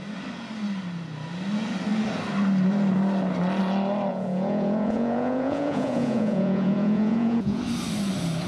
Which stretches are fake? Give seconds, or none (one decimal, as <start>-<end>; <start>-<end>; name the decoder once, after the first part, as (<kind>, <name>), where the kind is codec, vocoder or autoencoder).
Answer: 4.1-7.6 (vocoder, Vocos)